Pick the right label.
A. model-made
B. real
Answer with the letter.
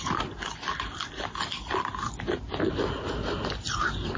B